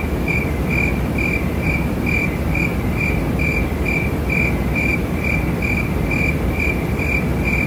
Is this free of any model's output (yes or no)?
yes